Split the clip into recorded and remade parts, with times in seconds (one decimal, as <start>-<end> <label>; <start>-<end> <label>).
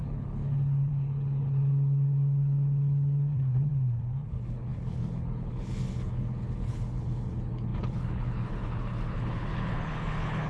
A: 0.0-10.5 remade